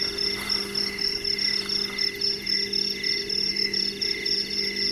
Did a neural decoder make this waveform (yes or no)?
no